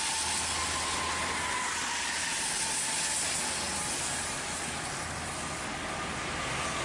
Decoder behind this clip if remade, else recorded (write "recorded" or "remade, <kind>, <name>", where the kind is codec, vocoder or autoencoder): recorded